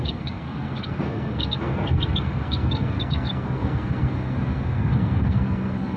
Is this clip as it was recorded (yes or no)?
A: no